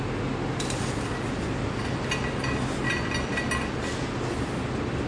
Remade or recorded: recorded